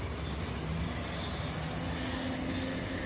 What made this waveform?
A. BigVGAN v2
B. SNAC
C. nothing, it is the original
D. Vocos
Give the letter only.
C